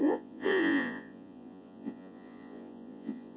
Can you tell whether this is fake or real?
fake